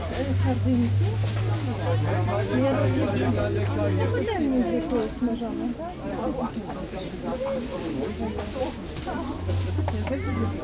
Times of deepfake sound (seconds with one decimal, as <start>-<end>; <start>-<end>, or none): none